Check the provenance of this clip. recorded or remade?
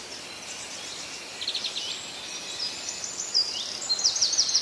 recorded